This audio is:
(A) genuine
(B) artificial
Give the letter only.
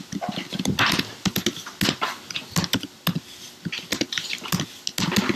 A